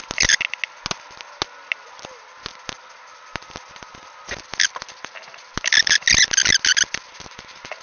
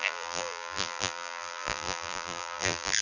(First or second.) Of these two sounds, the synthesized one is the second